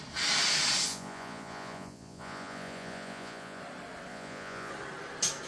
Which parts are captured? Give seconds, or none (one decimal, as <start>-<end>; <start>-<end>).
0.0-0.9; 3.6-4.1; 4.7-5.5